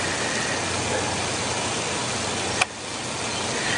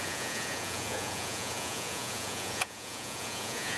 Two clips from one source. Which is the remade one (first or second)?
second